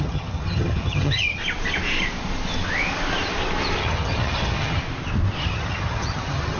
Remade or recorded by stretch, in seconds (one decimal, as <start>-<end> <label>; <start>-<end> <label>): 0.0-1.4 remade; 1.4-3.8 recorded; 3.8-4.8 remade; 4.8-5.4 recorded; 5.4-6.6 remade